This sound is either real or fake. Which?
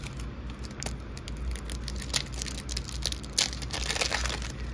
real